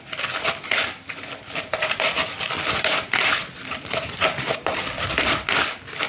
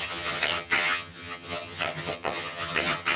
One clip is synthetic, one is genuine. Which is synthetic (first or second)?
second